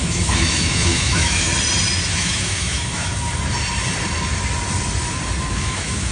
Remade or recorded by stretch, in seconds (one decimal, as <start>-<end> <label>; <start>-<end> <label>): 0.0-1.5 remade; 1.5-2.1 recorded; 2.1-3.1 remade; 3.1-5.5 recorded; 5.5-6.1 remade